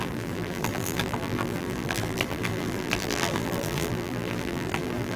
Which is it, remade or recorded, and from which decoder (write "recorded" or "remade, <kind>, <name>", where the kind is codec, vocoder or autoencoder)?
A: remade, vocoder, BigVGAN v2